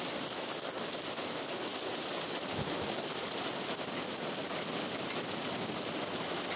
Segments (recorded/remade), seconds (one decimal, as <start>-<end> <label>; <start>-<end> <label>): 0.0-6.6 recorded